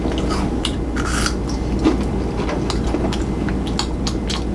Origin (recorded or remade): recorded